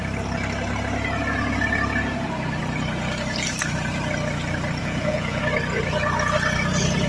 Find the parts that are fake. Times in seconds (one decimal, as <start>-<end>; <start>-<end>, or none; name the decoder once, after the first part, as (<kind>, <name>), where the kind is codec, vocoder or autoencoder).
4.8-5.4 (vocoder, Vocos)